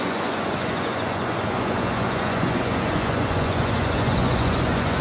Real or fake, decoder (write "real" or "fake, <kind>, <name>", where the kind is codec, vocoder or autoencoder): fake, vocoder, Vocos